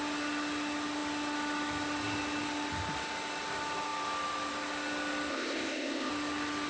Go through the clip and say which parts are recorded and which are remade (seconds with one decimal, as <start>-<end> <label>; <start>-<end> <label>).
0.0-5.3 recorded; 5.3-6.1 remade; 6.1-6.7 recorded